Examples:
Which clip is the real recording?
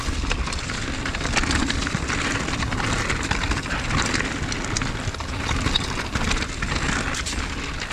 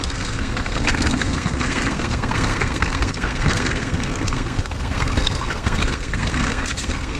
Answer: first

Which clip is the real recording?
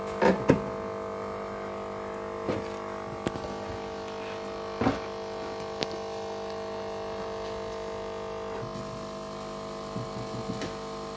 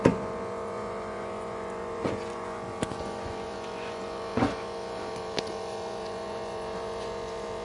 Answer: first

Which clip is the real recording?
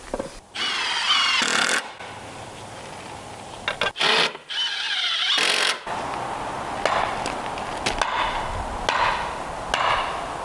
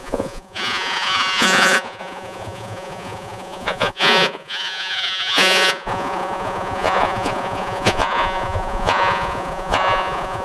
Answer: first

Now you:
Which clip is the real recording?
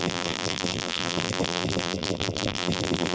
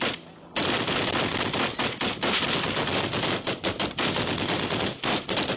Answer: second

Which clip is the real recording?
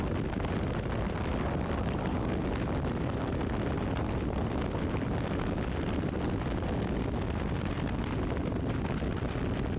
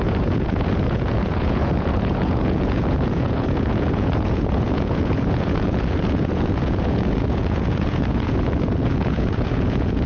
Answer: first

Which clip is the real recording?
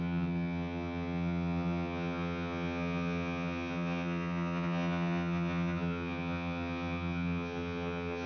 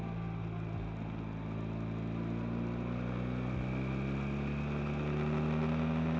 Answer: second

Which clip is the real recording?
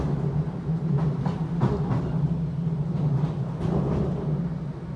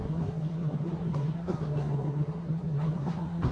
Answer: first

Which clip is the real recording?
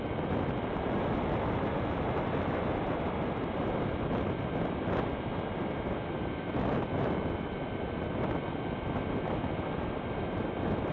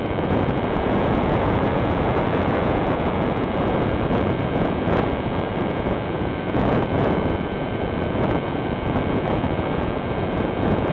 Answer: first